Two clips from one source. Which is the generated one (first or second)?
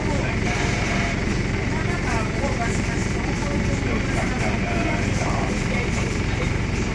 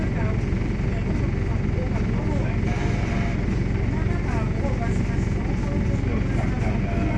first